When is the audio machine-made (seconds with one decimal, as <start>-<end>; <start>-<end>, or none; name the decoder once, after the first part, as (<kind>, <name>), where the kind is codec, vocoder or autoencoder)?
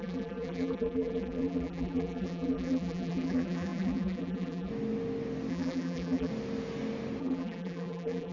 0.0-4.7 (vocoder, BigVGAN v2); 5.5-6.3; 7.2-8.3